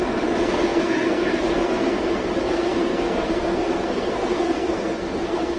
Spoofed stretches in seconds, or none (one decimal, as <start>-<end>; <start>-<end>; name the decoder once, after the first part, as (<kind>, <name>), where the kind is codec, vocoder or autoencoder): 0.0-5.6 (codec, SNAC)